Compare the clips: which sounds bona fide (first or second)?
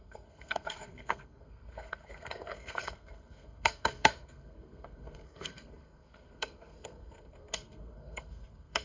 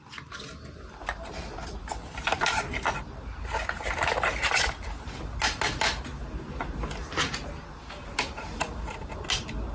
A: second